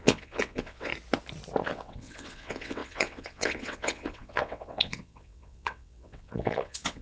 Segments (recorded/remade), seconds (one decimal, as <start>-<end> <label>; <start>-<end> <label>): 0.0-0.9 remade; 0.9-1.6 recorded; 1.6-7.0 remade